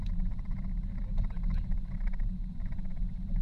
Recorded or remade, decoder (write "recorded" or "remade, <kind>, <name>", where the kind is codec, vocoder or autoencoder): recorded